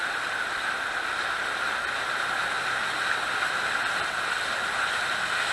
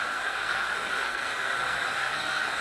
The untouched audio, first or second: first